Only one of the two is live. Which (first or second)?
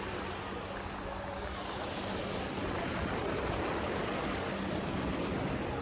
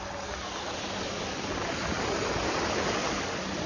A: first